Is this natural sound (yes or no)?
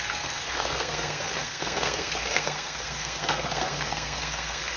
no